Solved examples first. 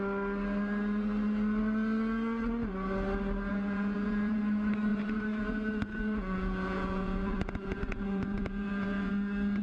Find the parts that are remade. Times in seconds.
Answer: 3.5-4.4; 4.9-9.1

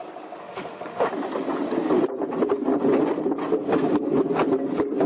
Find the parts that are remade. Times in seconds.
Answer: 0.4-1.1

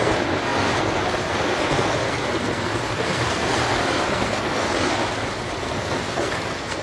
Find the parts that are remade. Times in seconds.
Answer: 0.0-5.0; 5.6-6.8

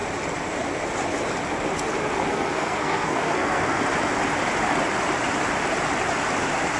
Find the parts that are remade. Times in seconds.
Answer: 2.3-3.8